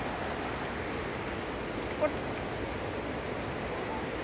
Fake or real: real